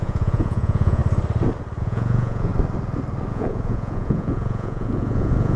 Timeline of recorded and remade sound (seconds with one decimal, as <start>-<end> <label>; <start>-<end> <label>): 0.0-1.0 remade; 1.0-1.8 recorded; 1.8-2.5 remade; 2.5-3.3 recorded; 3.3-5.6 remade

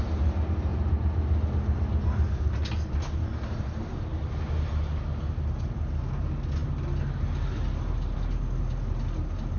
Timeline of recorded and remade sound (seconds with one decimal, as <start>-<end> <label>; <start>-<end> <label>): 0.0-9.6 recorded

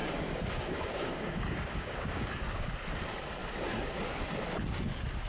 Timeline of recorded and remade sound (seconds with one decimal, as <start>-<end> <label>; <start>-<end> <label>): 0.0-2.6 remade; 2.6-5.3 recorded

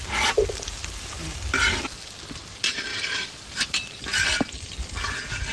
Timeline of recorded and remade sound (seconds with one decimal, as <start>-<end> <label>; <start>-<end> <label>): 0.0-5.5 recorded

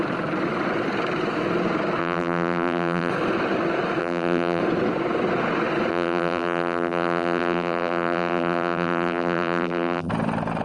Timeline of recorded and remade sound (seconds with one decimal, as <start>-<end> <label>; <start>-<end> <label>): 0.0-2.0 recorded; 2.0-3.1 remade; 3.1-4.0 recorded; 4.0-4.6 remade; 4.6-5.9 recorded; 5.9-10.1 remade; 10.1-10.6 recorded

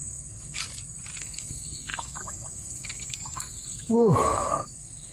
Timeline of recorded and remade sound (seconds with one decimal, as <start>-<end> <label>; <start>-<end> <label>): 0.0-0.6 remade; 0.6-1.2 recorded; 1.2-5.1 remade